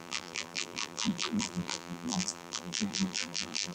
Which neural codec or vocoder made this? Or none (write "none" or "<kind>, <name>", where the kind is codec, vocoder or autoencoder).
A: vocoder, BigVGAN v2